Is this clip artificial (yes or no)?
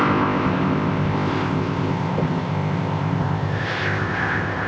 yes